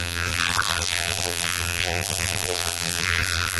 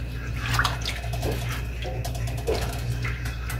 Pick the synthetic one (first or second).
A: first